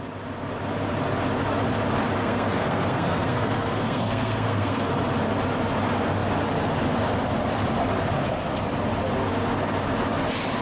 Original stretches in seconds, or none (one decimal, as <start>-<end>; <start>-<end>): 0.0-2.2; 4.9-10.6

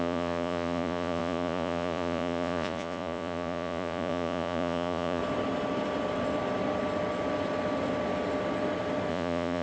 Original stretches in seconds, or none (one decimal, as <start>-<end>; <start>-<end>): 5.2-9.1

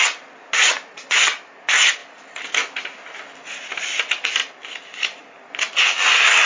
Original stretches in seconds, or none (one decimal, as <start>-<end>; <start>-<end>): 0.0-6.5

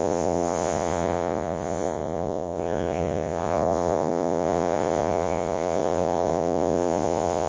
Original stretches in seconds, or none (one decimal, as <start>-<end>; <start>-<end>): none

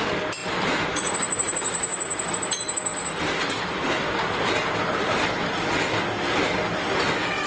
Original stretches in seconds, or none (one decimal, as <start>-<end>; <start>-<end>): 0.0-0.4; 2.3-2.9; 5.4-7.5